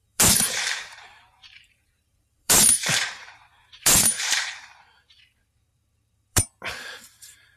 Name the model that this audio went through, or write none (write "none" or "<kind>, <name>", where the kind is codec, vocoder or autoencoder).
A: vocoder, BigVGAN v2